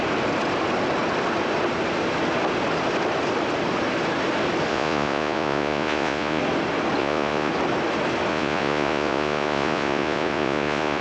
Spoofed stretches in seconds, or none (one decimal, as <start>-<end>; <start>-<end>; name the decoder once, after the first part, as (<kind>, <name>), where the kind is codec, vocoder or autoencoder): 4.7-6.4 (vocoder, Vocos); 7.0-7.5; 8.3-11.0